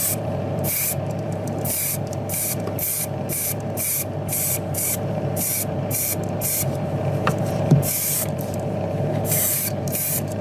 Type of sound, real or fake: fake